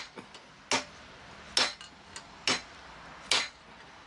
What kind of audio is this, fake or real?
real